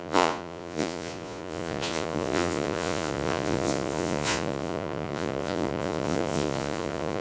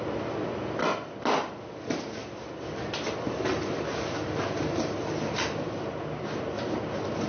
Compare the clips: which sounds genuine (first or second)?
second